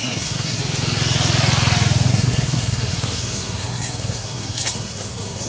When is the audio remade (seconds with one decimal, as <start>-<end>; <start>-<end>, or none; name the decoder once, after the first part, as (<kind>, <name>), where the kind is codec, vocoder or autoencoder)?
0.0-0.6 (codec, SNAC); 2.1-5.5